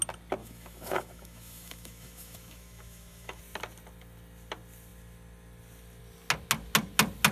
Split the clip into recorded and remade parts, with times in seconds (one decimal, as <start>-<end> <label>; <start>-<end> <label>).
0.0-0.4 recorded; 0.4-3.4 remade; 3.4-7.3 recorded

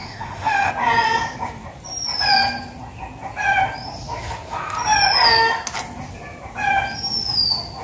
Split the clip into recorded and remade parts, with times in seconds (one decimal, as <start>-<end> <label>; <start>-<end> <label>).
0.0-0.7 remade; 0.7-7.8 recorded

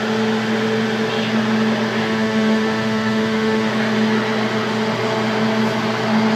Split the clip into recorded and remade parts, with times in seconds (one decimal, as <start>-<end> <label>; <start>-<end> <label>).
0.0-2.0 recorded; 2.0-3.7 remade; 3.7-6.4 recorded

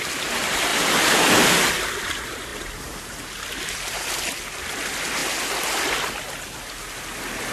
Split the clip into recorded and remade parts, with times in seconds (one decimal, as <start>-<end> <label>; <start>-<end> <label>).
0.0-7.5 recorded

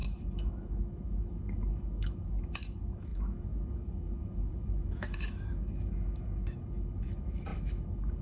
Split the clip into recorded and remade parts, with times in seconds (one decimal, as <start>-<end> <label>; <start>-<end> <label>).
0.0-8.2 remade

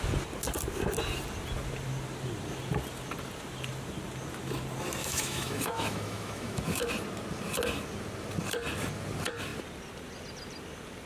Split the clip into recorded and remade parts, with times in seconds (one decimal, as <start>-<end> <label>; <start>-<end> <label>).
0.0-5.0 recorded; 5.0-6.9 remade; 6.9-11.1 recorded